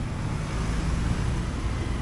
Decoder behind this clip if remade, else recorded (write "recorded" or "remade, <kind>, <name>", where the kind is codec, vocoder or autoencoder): recorded